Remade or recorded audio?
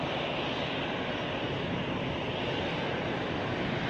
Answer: recorded